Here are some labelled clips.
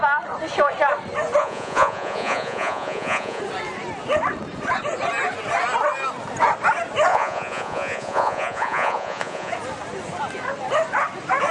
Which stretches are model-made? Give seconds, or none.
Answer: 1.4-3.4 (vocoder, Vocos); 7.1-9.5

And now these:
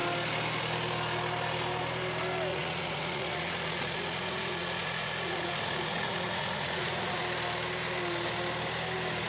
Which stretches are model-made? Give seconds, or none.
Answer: 2.5-7.2 (vocoder, Vocos)

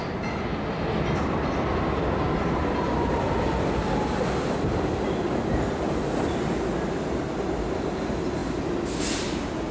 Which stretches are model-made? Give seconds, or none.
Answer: none